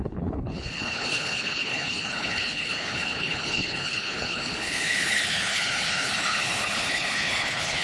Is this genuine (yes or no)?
no